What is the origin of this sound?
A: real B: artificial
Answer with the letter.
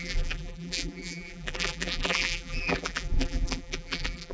B